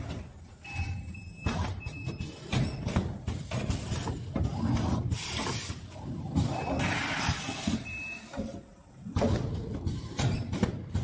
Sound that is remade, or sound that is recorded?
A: remade